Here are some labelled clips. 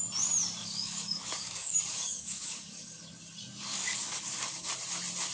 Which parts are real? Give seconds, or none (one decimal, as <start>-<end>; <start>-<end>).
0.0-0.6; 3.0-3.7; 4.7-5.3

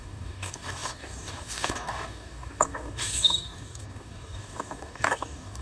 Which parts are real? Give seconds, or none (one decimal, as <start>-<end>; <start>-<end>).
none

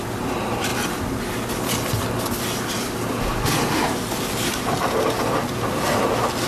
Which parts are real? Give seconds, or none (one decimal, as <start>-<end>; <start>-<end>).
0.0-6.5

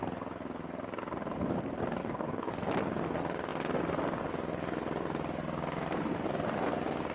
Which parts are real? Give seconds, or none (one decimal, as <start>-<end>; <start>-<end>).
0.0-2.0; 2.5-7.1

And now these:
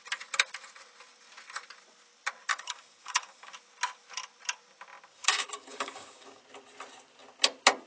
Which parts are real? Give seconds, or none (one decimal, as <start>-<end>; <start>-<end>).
0.0-2.5; 3.5-5.1; 6.4-7.9